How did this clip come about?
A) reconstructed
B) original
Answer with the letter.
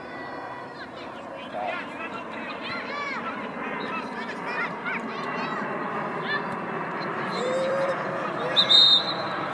A